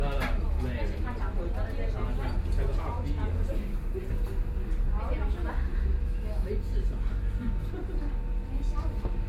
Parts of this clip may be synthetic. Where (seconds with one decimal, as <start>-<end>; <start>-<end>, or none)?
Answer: 5.7-6.5